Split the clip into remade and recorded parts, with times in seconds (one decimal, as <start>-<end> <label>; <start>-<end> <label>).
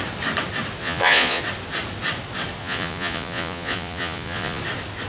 0.0-0.8 recorded; 0.8-1.4 remade; 1.4-2.6 recorded; 2.6-4.6 remade; 4.6-5.1 recorded